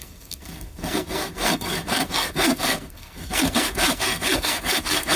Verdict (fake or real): fake